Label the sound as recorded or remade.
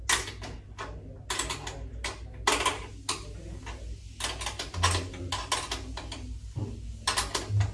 recorded